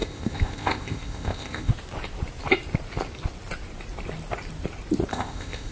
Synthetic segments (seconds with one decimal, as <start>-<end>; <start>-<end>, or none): 0.0-1.7; 5.1-5.7